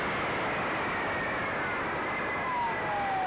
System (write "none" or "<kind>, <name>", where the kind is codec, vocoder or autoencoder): none